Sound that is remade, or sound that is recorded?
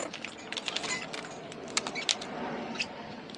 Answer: recorded